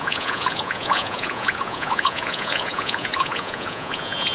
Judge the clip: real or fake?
fake